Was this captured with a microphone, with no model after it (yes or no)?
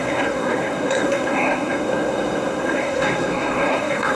no